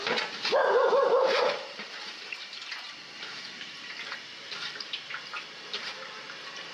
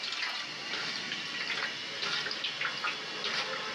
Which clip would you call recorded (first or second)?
second